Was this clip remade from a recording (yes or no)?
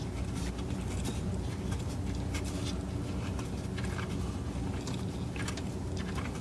no